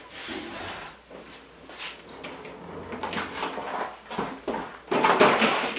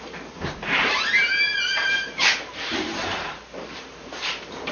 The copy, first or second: second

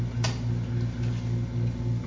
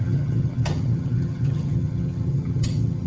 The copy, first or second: second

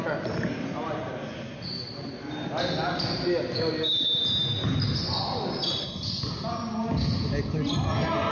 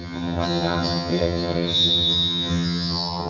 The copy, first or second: second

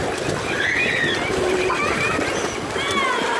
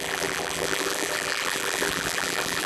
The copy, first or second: second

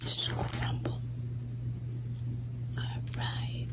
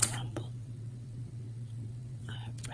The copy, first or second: second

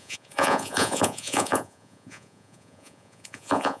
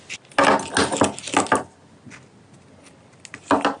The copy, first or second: first